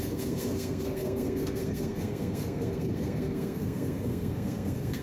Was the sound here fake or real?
fake